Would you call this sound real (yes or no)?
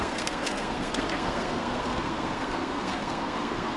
no